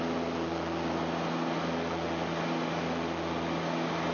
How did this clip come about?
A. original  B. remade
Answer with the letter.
A